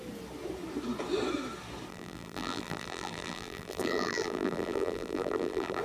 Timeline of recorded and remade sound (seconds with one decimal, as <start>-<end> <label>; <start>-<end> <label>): 0.0-1.9 recorded; 1.9-5.8 remade